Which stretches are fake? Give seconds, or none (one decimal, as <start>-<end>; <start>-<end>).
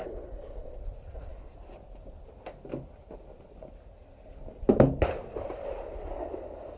0.0-0.8